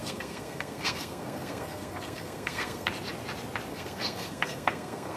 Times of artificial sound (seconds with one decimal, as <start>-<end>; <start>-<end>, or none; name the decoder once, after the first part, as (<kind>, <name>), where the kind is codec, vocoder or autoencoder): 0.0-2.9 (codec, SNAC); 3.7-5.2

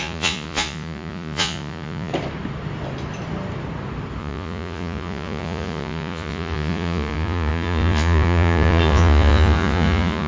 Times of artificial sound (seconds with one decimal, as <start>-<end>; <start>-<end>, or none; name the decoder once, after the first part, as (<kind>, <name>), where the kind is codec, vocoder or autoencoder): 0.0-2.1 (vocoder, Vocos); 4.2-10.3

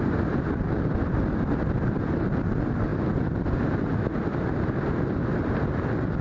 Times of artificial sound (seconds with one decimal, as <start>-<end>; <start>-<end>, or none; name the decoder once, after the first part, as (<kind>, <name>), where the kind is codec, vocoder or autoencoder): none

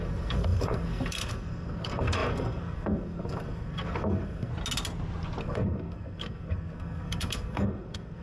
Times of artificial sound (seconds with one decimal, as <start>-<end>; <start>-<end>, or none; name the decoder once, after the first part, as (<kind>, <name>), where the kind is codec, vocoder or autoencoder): 0.0-4.5 (codec, SNAC); 5.4-8.2